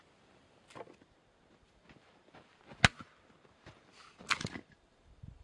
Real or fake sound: real